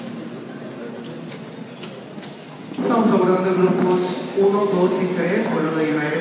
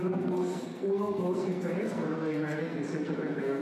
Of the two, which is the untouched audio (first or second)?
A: first